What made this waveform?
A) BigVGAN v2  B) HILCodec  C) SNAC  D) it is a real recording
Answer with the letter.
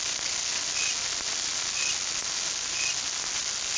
D